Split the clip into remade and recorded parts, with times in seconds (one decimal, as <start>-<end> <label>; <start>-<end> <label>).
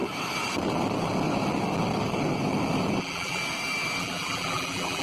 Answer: 0.0-3.0 recorded; 3.0-3.4 remade; 3.4-4.0 recorded; 4.0-5.0 remade